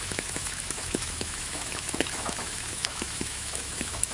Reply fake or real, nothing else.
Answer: fake